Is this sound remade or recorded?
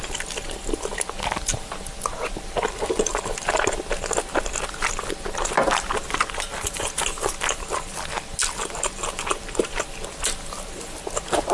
recorded